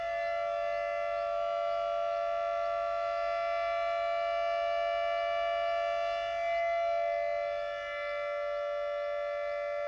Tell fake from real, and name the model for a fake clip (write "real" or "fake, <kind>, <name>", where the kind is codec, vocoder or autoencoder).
real